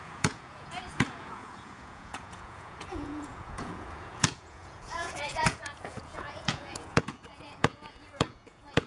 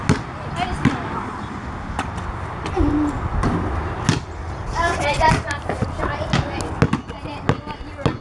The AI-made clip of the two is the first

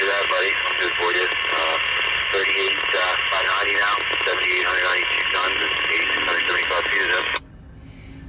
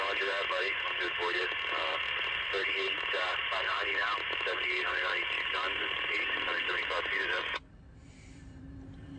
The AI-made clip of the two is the second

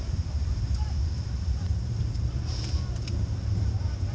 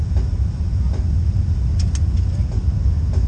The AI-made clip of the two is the first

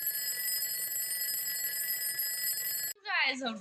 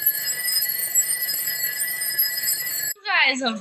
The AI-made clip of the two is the second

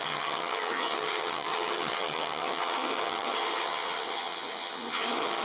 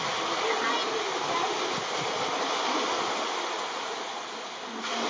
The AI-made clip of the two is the first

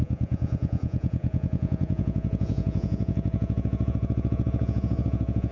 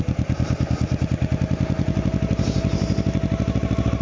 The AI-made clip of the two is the first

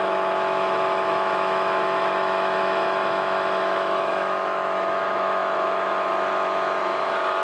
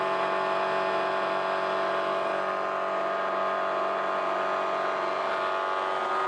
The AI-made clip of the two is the first